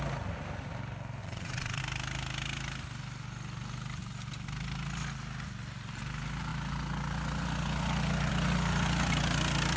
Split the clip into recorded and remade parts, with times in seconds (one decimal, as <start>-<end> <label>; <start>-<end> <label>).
0.0-1.2 recorded; 1.2-1.8 remade; 1.8-9.8 recorded